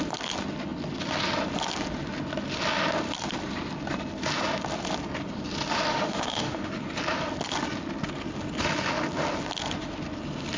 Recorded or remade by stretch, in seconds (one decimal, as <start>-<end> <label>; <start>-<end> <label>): 0.0-5.9 recorded; 5.9-6.7 remade; 6.7-10.6 recorded